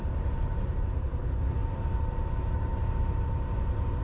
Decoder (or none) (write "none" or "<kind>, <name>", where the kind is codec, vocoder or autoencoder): vocoder, BigVGAN v2